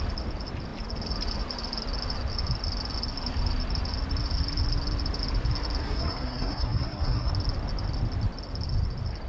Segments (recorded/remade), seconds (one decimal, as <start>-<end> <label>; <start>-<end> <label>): 0.0-5.8 recorded; 5.8-7.3 remade; 7.3-9.3 recorded